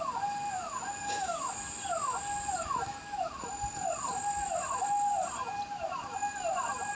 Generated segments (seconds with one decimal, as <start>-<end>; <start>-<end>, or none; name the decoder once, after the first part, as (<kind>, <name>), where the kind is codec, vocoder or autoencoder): 1.0-1.5 (codec, DAC)